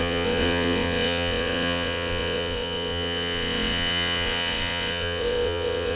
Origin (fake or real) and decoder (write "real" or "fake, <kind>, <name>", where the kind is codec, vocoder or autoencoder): fake, vocoder, WaveNeXt